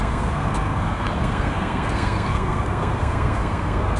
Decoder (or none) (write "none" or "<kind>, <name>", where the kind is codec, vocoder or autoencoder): codec, SNAC